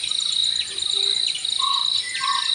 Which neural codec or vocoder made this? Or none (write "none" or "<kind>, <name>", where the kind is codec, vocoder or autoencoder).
none